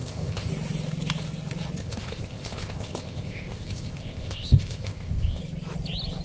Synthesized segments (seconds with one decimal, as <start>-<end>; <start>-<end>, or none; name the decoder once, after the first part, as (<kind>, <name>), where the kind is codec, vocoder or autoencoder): 0.0-0.5 (codec, ZipCodec); 1.8-5.4